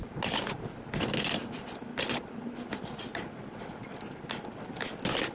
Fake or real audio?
real